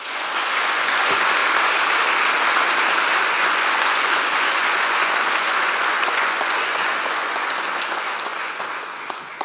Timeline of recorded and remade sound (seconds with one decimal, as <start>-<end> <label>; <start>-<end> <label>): 0.0-1.4 remade; 1.4-3.2 recorded; 3.2-9.4 remade